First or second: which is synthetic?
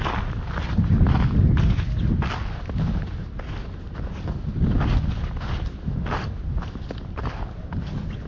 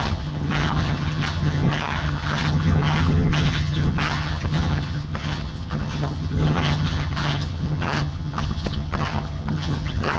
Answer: second